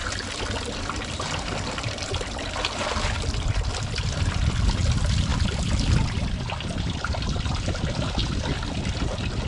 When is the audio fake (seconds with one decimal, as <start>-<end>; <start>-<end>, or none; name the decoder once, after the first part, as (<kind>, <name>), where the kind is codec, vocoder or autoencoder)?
4.3-8.2 (vocoder, BigVGAN v2); 8.8-9.5